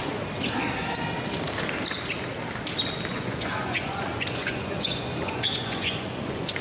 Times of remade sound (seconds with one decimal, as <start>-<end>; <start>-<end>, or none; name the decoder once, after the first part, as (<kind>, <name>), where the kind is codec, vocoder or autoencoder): 3.1-6.6 (vocoder, Vocos)